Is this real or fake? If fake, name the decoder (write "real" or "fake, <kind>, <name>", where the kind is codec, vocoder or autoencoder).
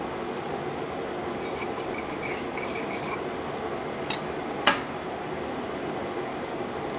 real